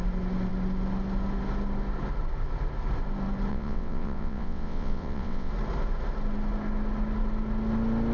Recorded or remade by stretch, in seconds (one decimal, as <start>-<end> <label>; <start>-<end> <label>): 0.0-3.5 recorded; 3.5-5.5 remade; 5.5-8.1 recorded